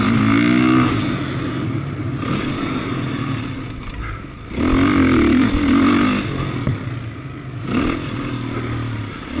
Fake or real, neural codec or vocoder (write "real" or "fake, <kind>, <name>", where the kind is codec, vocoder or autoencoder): real